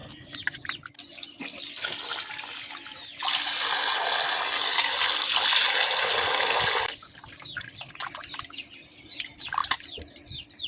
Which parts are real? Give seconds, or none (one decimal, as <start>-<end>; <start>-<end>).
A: 0.0-10.7